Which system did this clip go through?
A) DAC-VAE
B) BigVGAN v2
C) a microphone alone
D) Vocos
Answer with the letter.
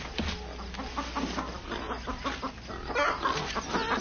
C